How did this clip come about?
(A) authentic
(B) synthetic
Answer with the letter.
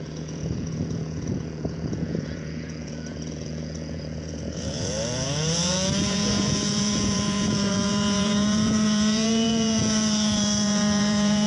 B